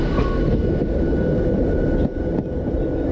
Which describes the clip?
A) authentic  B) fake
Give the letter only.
A